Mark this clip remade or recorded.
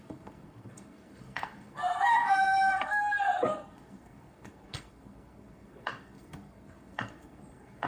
remade